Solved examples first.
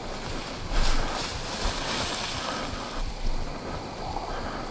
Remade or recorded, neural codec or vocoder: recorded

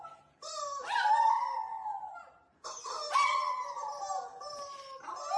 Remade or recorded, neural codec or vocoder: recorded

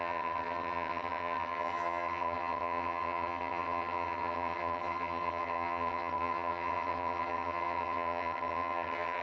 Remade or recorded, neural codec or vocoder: remade, vocoder, HiFi-GAN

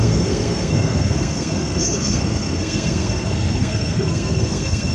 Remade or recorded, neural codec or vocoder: remade, codec, SNAC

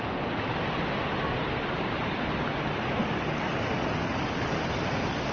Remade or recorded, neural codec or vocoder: recorded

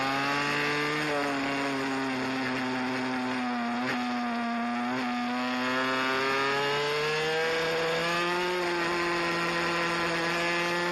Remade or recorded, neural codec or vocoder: recorded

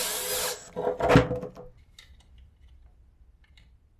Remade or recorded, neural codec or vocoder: recorded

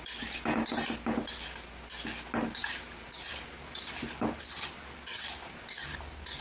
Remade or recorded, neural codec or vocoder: recorded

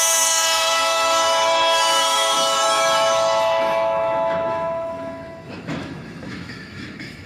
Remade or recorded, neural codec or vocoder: remade, autoencoder, DAC-VAE